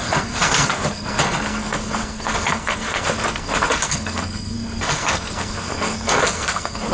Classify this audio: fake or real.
fake